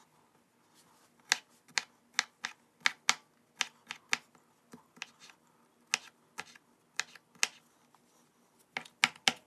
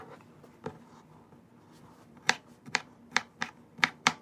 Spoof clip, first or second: second